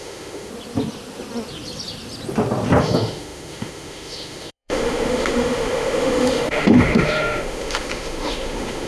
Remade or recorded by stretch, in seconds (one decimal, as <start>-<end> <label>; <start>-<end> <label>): 0.0-0.5 remade; 0.5-2.8 recorded; 2.8-8.9 remade